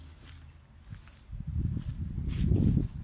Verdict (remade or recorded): recorded